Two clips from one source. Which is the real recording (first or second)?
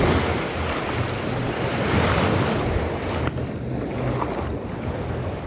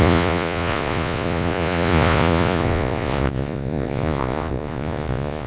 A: first